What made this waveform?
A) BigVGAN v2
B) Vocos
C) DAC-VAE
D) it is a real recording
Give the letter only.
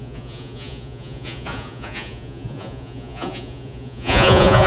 B